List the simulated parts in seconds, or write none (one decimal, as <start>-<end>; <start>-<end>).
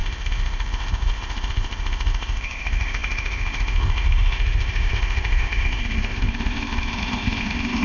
0.0-7.8